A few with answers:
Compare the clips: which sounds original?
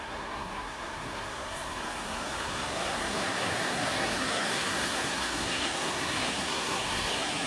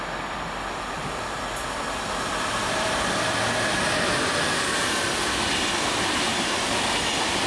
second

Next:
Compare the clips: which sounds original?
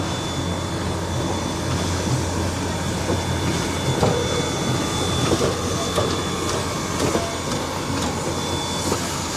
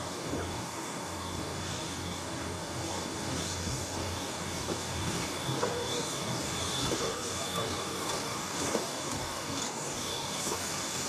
first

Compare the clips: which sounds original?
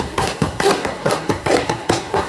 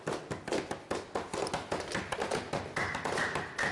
second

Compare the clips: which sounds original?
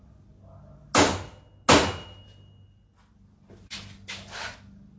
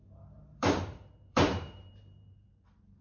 first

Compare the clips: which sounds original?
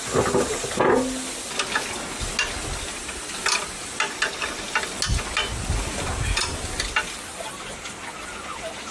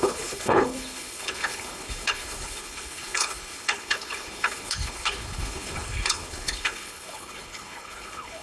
first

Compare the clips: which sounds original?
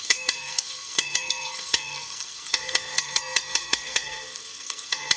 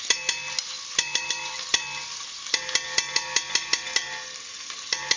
second